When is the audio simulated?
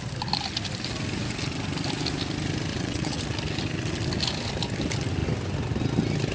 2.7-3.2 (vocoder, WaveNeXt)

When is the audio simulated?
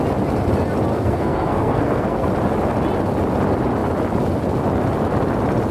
0.9-2.3 (codec, SNAC)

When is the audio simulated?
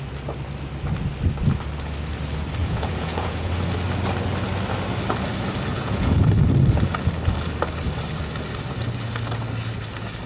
2.6-3.5 (vocoder, Vocos); 5.7-6.2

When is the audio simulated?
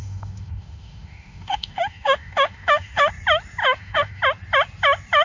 0.0-3.1 (autoencoder, DAC-VAE); 3.6-4.2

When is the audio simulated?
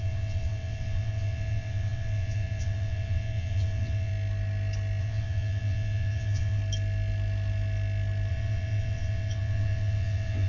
0.0-4.1 (vocoder, WaveNeXt); 5.0-6.6; 8.3-10.5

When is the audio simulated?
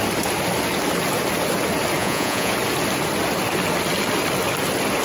2.0-2.5 (vocoder, Vocos)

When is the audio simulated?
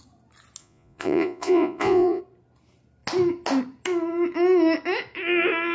0.6-2.2 (vocoder, Vocos)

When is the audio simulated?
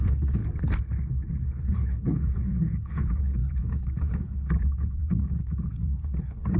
0.0-0.4 (codec, HILCodec); 1.1-6.6